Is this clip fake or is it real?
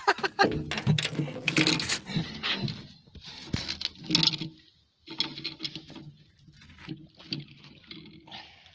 real